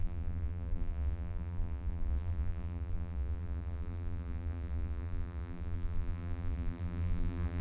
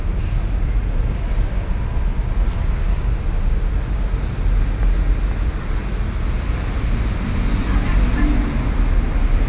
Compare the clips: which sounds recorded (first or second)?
second